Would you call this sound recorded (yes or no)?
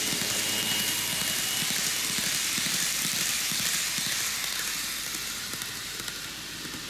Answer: no